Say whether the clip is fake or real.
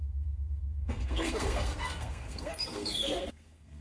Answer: fake